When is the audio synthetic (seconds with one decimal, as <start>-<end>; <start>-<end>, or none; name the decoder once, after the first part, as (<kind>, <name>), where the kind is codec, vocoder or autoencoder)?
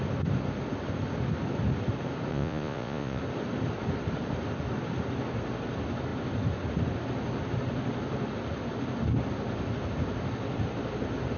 2.3-3.2 (vocoder, Vocos)